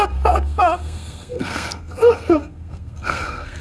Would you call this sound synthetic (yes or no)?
yes